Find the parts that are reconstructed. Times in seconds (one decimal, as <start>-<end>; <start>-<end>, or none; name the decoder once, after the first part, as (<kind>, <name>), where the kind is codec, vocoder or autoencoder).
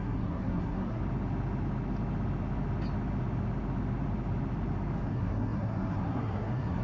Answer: 0.0-1.0 (codec, SNAC); 5.1-6.8